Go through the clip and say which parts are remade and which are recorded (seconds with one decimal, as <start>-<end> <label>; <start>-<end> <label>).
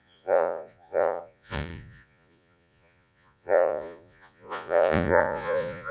0.0-5.9 remade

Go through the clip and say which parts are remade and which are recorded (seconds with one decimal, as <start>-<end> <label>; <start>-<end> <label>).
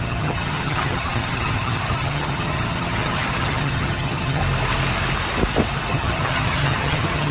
0.0-4.4 remade; 4.4-5.9 recorded; 5.9-7.3 remade